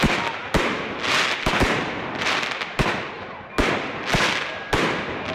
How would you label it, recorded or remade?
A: recorded